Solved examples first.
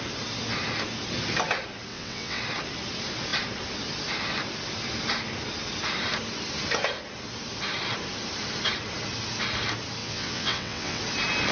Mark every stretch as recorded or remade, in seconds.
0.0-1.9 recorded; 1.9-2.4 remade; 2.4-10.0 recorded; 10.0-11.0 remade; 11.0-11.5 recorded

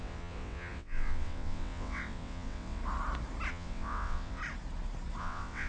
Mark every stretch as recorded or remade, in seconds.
0.0-2.8 remade; 2.8-3.5 recorded; 3.5-4.4 remade; 4.4-5.2 recorded; 5.2-5.7 remade

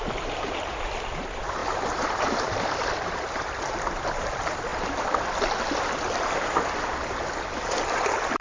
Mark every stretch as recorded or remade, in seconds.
0.0-8.4 recorded

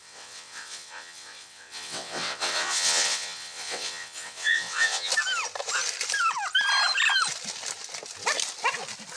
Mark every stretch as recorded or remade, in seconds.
0.0-5.1 remade; 5.1-9.2 recorded

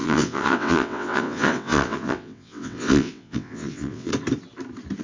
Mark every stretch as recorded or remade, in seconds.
0.0-4.1 remade; 4.1-5.0 recorded

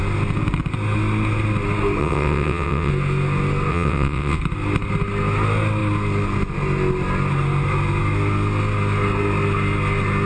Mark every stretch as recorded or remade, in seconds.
0.0-2.0 recorded; 2.0-2.9 remade; 2.9-3.7 recorded; 3.7-4.4 remade; 4.4-10.3 recorded

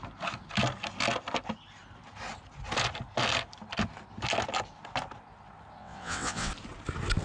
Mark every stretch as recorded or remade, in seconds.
0.0-5.8 recorded; 5.8-6.5 remade; 6.5-7.2 recorded

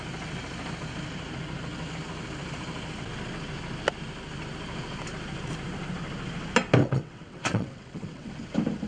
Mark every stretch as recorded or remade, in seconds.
0.0-6.8 recorded; 6.8-8.3 remade; 8.3-8.9 recorded